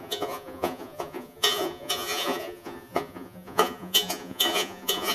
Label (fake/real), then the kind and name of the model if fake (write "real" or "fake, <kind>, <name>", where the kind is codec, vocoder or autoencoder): fake, vocoder, Vocos